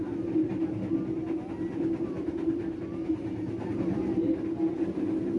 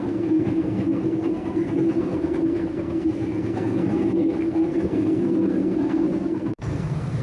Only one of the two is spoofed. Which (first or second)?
second